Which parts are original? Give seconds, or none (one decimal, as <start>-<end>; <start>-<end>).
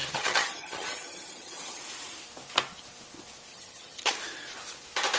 1.8-3.5; 4.1-5.2